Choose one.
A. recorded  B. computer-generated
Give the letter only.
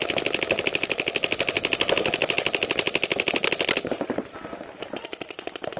A